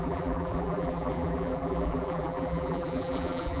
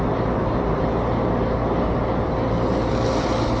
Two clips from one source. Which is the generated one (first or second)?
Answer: first